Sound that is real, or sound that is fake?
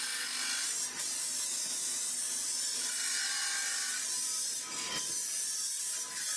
real